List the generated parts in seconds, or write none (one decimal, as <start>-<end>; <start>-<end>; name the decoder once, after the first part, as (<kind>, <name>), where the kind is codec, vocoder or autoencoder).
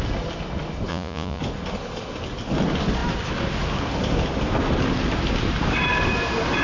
0.9-1.4 (vocoder, Vocos)